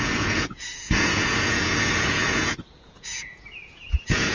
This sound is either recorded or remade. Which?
remade